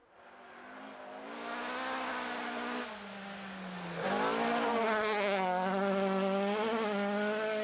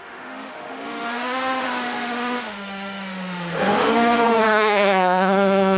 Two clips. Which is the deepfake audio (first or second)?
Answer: second